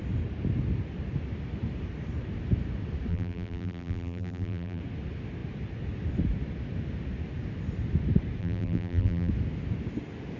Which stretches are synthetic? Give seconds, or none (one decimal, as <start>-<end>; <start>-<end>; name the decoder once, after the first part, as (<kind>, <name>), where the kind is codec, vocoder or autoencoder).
3.1-4.8 (vocoder, BigVGAN v2); 8.4-9.3